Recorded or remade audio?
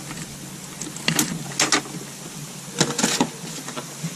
recorded